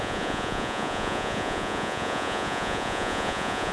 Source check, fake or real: fake